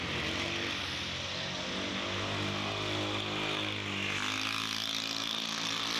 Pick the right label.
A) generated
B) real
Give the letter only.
B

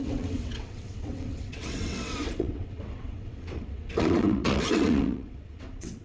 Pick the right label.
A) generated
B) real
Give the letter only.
A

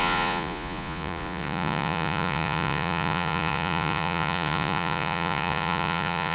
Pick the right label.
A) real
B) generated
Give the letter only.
B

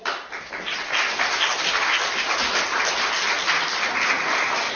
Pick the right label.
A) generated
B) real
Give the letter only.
B